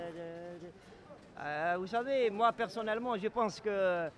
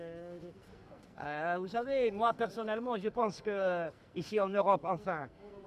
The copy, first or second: second